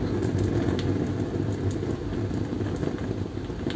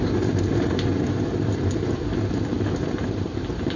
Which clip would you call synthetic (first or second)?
second